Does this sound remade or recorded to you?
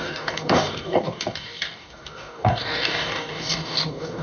remade